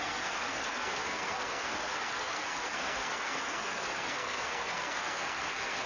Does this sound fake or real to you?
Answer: fake